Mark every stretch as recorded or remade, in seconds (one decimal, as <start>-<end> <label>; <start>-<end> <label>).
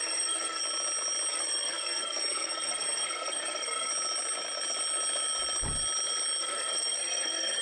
0.0-0.6 remade; 0.6-1.3 recorded; 1.3-3.9 remade; 3.9-6.4 recorded; 6.4-7.6 remade